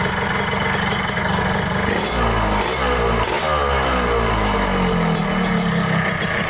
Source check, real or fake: real